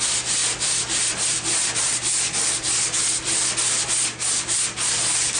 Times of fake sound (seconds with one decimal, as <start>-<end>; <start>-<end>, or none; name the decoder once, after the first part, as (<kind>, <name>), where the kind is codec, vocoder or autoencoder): none